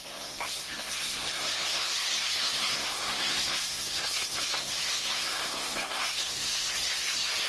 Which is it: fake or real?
fake